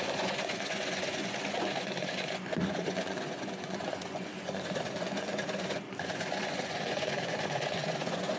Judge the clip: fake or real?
fake